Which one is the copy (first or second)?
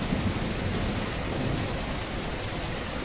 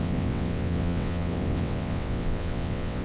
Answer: second